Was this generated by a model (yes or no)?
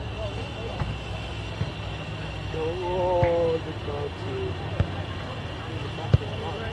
no